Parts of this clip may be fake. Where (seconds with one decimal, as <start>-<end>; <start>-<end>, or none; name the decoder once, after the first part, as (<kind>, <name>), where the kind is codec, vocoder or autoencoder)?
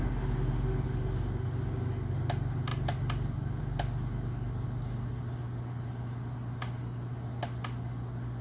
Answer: 2.7-3.6 (vocoder, BigVGAN v2)